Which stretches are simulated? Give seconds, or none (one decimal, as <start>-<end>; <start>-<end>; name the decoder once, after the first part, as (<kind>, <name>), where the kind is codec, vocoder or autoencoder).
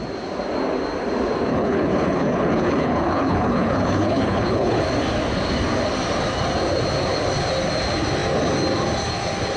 1.5-4.8 (codec, HILCodec)